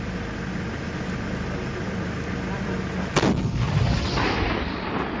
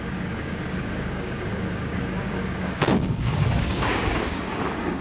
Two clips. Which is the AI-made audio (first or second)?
second